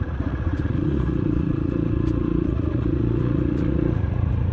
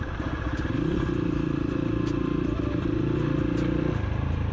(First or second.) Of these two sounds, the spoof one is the first